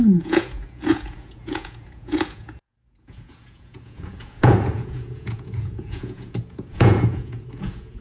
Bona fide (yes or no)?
no